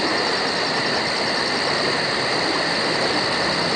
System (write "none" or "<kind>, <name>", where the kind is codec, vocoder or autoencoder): none